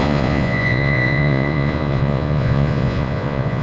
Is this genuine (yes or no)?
no